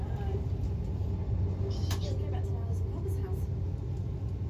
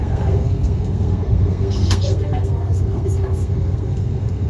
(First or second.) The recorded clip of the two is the first